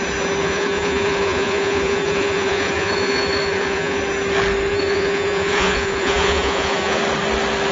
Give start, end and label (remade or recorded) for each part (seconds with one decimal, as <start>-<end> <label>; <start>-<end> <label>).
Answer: 0.0-0.4 recorded; 0.4-4.0 remade; 4.0-4.7 recorded; 4.7-7.0 remade; 7.0-7.7 recorded